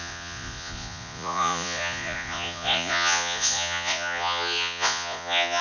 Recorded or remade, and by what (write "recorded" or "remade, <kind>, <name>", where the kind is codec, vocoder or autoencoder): remade, vocoder, Vocos